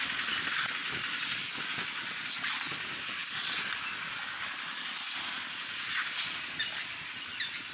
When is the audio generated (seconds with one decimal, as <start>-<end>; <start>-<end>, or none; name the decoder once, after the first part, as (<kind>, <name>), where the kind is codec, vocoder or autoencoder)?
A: none